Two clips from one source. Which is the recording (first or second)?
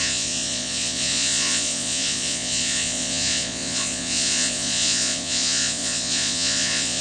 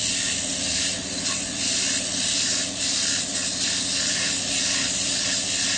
second